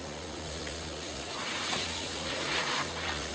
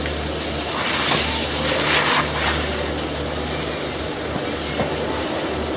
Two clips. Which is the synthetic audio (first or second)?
first